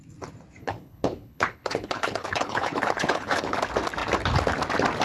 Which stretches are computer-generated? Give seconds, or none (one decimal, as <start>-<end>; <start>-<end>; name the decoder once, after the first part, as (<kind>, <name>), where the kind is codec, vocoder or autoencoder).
0.6-3.6 (codec, HILCodec)